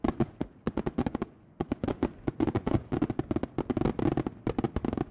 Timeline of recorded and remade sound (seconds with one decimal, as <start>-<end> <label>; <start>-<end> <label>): 0.0-3.1 remade; 3.1-5.1 recorded